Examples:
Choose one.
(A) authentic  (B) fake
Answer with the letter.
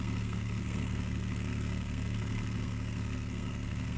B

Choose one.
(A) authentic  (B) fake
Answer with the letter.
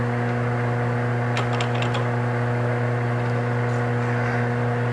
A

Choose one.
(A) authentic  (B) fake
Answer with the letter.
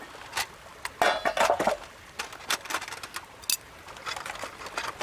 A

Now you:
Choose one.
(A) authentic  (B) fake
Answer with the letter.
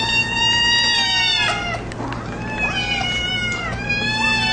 A